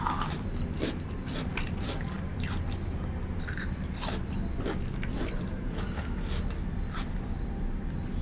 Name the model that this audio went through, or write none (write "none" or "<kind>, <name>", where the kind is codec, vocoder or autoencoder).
vocoder, BigVGAN v2